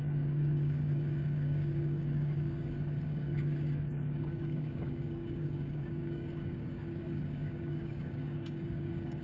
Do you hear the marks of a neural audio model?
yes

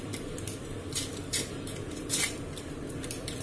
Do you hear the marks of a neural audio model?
yes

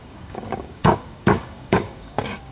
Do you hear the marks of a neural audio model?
yes